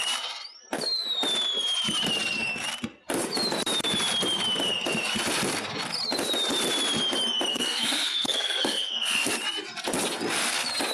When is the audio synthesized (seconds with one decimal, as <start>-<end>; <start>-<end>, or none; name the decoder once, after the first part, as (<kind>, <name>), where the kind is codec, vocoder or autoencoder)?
7.5-9.3 (codec, SNAC)

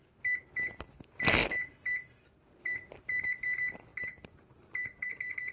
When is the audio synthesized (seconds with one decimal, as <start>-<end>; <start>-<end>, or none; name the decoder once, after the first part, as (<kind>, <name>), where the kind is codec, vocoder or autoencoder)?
1.4-3.3 (vocoder, BigVGAN v2)

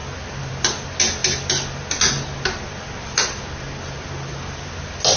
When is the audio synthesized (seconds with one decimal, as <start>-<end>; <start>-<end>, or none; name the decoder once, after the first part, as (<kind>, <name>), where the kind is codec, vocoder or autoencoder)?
none

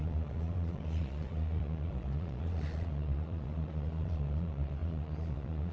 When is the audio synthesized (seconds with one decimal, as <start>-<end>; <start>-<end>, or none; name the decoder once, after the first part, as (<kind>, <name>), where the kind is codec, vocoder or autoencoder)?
0.0-5.7 (vocoder, Vocos)

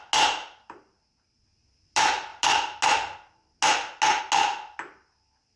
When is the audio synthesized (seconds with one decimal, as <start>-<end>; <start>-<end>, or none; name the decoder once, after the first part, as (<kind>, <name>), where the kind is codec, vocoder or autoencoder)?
none